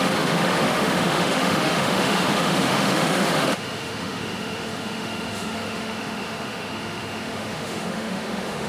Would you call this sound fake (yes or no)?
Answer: yes